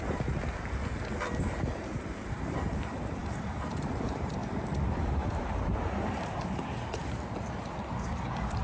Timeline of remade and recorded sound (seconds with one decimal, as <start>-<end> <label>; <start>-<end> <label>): 0.0-0.8 remade; 0.8-1.4 recorded; 1.4-4.4 remade; 4.4-4.9 recorded; 4.9-7.0 remade; 7.0-8.6 recorded